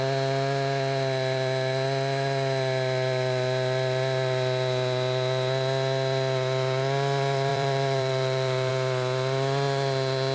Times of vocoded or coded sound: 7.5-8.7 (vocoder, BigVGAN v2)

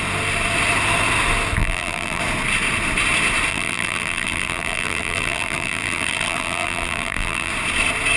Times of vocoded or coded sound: 1.6-2.2 (vocoder, BigVGAN v2); 3.5-7.5

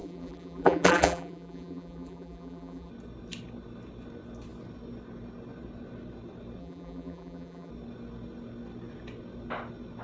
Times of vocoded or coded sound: 0.0-2.9 (vocoder, BigVGAN v2); 6.6-7.7

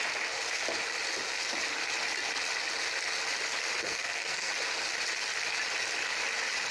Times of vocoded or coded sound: 3.8-4.5 (codec, SNAC)

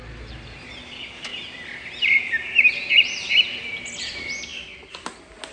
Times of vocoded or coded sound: none

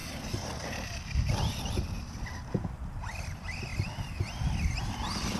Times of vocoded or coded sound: 0.0-3.2 (vocoder, BigVGAN v2); 3.7-4.8

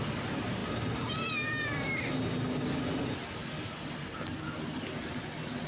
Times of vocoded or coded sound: none